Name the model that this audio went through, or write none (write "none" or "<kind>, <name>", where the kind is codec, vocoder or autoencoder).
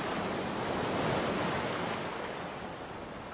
none